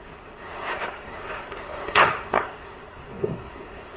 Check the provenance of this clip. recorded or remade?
remade